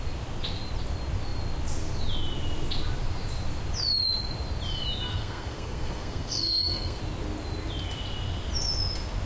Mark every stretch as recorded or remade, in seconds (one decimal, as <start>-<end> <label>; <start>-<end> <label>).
0.0-5.1 recorded; 5.1-7.0 remade; 7.0-9.3 recorded